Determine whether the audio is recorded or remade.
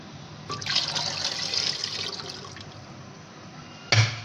recorded